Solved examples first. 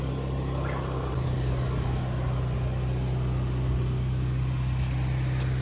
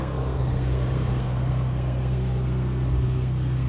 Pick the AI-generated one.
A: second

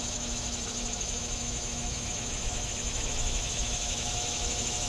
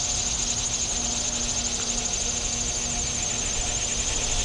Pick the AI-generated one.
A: first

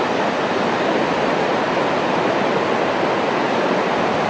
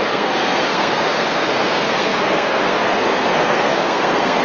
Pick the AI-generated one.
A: second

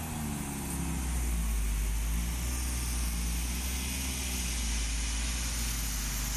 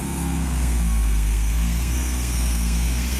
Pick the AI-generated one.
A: second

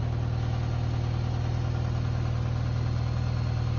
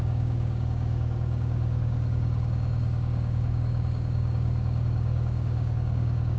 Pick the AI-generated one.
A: second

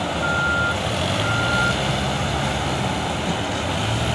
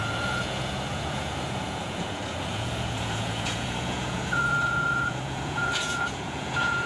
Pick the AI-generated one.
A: second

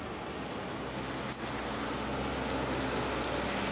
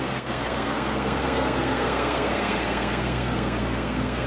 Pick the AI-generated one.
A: second